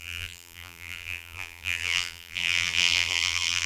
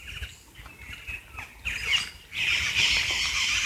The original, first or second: second